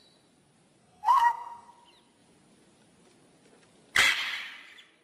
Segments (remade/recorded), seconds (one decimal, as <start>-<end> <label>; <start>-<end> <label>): 0.0-0.8 recorded; 0.8-1.7 remade; 1.7-5.0 recorded